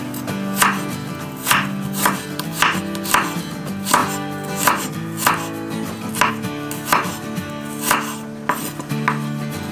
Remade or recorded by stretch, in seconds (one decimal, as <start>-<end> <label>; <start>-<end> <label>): 0.0-9.7 recorded